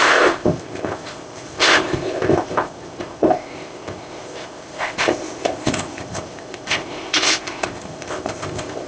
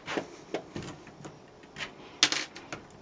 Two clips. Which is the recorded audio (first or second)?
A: second